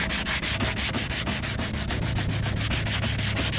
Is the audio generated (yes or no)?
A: no